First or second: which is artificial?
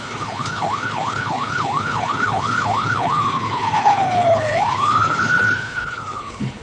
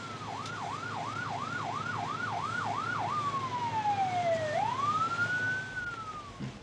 first